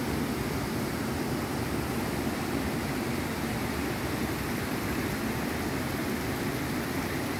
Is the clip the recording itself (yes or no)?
yes